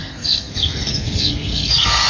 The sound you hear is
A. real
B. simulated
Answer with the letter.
B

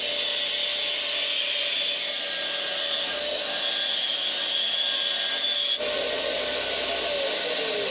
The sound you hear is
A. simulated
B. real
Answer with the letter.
B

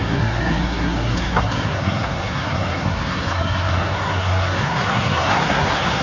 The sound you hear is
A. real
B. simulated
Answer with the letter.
B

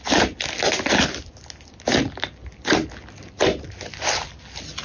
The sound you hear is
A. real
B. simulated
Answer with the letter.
A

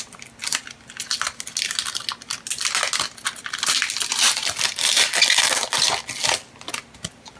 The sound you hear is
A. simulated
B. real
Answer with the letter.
B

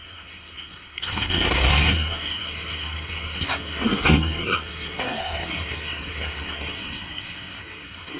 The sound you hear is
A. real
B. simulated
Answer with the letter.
B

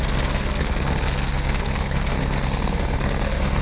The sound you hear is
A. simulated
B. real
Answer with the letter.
A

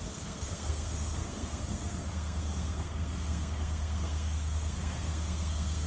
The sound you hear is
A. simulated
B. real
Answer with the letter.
A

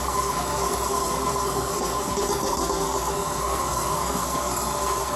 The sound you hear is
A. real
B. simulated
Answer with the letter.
B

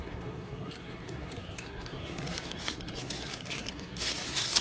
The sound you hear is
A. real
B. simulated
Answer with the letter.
B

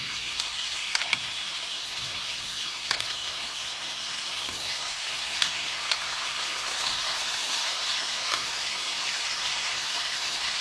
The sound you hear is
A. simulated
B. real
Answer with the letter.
A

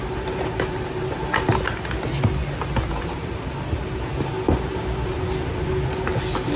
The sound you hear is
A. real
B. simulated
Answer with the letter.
A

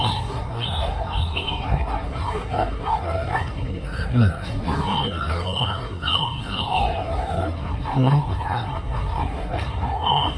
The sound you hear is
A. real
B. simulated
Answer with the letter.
B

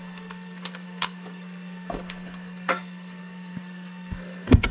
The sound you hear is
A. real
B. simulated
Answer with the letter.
B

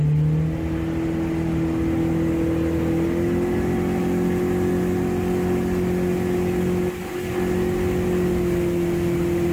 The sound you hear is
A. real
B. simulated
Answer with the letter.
A